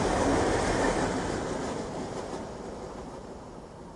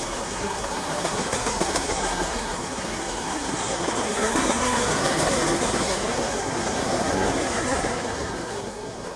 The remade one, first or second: second